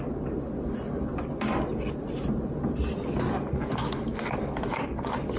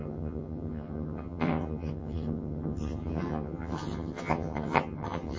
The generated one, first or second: second